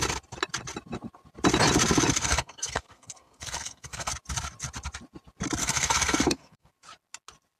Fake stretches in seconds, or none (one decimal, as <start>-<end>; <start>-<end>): 2.2-4.1; 5.6-6.7